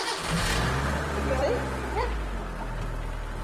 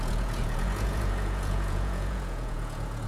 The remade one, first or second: second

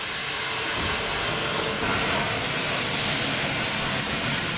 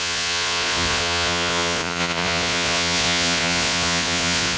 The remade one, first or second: second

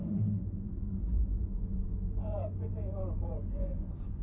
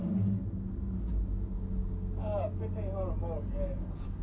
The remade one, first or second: first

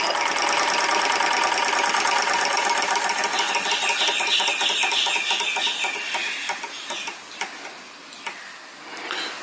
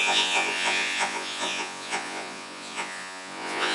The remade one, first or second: second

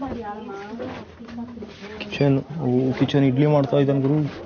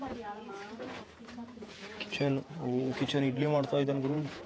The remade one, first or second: second